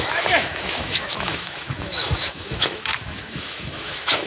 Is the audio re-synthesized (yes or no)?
yes